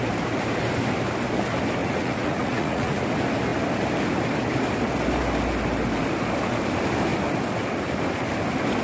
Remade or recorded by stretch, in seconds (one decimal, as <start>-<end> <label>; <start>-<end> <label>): 0.0-1.8 recorded; 1.8-3.0 remade; 3.0-8.8 recorded